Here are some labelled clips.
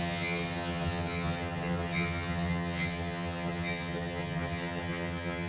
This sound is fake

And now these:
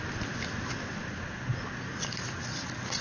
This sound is real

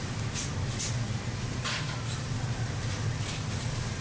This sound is real